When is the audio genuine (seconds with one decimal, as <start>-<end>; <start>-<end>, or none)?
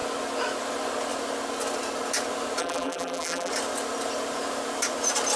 0.0-2.6; 3.5-5.4